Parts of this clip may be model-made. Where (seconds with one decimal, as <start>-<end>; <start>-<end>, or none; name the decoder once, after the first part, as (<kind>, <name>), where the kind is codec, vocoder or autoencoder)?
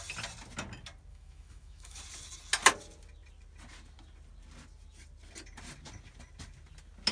1.1-2.0 (autoencoder, DAC-VAE)